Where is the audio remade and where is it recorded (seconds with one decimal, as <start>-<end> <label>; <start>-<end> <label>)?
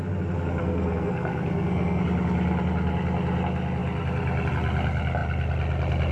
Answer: 0.0-0.6 recorded; 0.6-2.0 remade; 2.0-6.1 recorded